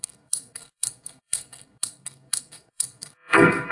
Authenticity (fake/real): fake